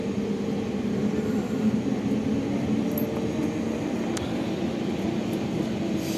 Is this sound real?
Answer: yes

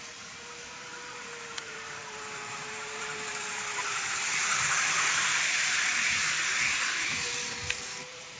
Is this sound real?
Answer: no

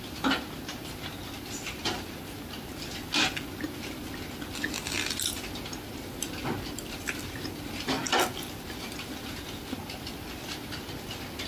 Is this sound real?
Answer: yes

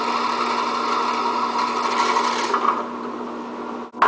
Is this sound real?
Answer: yes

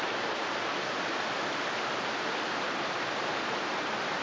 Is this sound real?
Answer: no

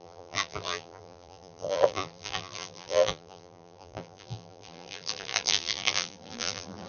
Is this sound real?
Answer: no